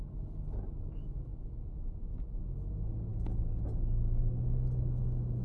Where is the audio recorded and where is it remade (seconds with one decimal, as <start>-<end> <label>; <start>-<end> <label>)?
0.0-1.3 recorded; 1.3-2.4 remade; 2.4-5.4 recorded